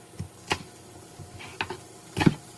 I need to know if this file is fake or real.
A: real